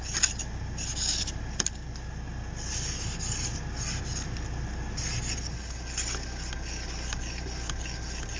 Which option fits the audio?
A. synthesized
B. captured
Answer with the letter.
B